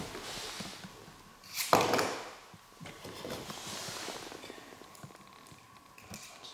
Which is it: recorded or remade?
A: recorded